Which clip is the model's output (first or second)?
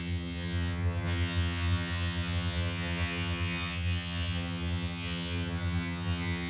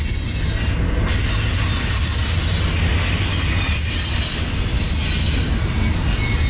first